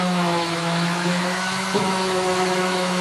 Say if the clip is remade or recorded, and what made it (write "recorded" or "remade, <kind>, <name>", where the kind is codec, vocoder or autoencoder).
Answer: remade, autoencoder, DAC-VAE